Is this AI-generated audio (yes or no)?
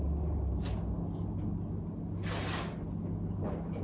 no